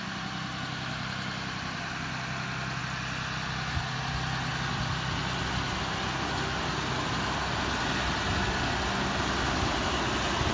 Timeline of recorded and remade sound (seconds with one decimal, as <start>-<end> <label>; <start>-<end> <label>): 0.0-10.5 recorded